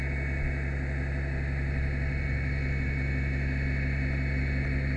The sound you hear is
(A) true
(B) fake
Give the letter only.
A